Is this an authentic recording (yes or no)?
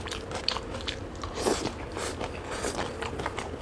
yes